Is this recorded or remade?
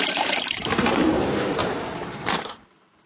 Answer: remade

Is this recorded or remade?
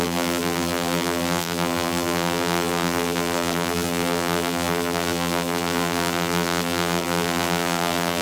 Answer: remade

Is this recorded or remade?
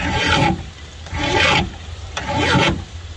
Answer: remade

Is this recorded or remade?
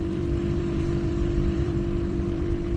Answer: remade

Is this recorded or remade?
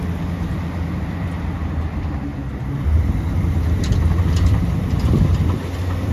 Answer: remade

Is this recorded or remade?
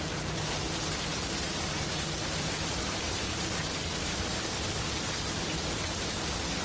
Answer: recorded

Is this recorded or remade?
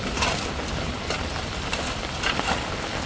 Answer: recorded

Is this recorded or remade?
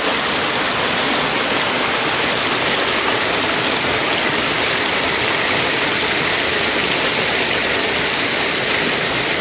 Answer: recorded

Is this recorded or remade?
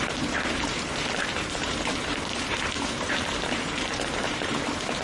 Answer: remade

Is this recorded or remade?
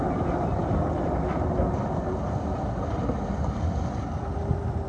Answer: remade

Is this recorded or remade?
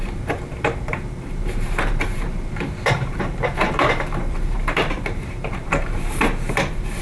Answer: remade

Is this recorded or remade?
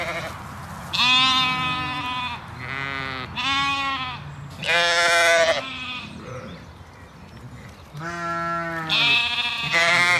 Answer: recorded